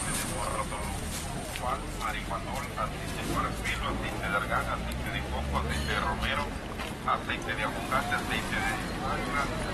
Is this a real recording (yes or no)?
yes